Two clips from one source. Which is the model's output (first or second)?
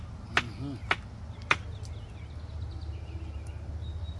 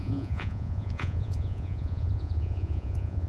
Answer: second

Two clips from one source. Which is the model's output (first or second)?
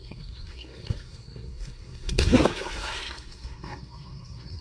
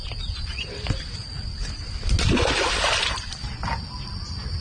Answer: first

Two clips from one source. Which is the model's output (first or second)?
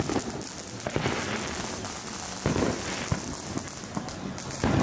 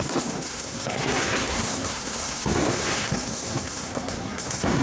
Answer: second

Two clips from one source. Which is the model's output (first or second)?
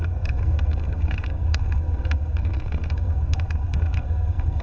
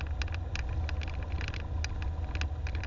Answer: first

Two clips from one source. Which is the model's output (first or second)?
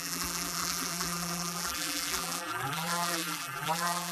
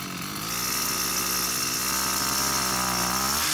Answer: first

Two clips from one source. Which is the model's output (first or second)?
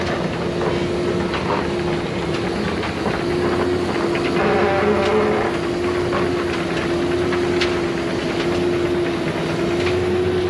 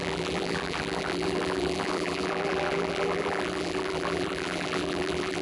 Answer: second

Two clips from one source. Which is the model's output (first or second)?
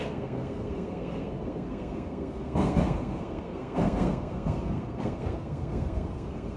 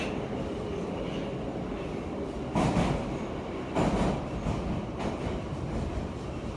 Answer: first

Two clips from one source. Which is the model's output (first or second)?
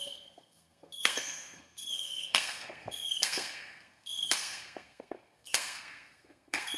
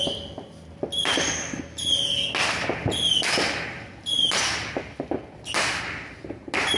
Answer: first